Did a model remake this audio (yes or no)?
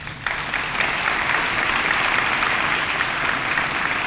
no